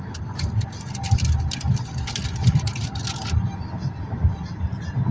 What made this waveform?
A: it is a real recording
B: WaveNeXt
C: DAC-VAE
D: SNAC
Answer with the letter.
A